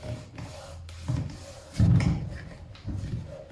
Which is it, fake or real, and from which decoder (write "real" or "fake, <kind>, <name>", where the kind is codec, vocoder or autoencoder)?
real